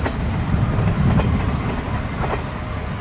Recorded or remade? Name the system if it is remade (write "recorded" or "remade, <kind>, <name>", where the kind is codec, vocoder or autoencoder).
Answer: recorded